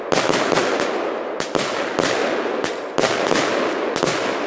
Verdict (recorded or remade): recorded